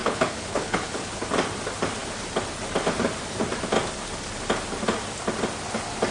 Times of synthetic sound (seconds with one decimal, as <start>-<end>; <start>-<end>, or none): 0.0-1.1